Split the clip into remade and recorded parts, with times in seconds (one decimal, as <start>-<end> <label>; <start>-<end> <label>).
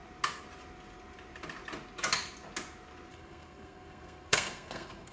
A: 0.0-3.1 recorded; 3.1-5.1 remade